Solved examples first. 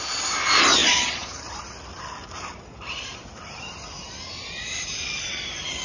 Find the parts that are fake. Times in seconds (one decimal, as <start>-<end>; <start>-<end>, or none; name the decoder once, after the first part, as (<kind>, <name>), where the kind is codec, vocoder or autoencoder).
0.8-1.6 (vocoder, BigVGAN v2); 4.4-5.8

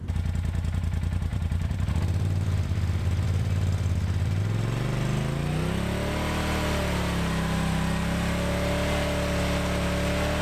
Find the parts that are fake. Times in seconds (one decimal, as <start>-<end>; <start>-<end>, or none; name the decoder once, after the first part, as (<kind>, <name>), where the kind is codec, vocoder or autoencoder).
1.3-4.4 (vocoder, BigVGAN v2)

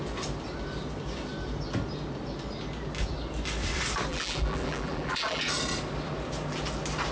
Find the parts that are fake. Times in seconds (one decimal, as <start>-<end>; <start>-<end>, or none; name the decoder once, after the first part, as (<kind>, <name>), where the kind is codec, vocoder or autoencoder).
4.1-5.4 (vocoder, BigVGAN v2)

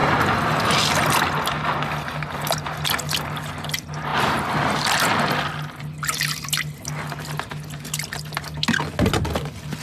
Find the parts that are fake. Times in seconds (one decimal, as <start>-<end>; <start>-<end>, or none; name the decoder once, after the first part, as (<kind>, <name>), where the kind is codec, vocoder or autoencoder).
4.1-4.8 (vocoder, BigVGAN v2)